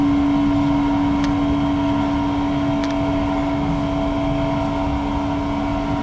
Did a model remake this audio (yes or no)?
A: no